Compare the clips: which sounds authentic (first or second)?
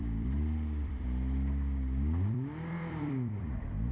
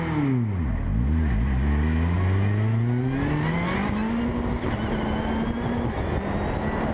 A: second